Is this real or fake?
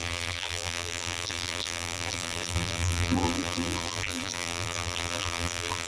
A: fake